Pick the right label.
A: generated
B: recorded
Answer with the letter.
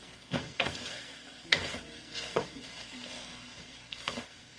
A